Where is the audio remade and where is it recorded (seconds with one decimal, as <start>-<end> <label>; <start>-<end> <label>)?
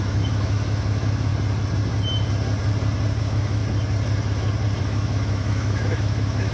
0.0-1.3 remade; 1.3-3.2 recorded; 3.2-3.6 remade; 3.6-4.8 recorded; 4.8-6.5 remade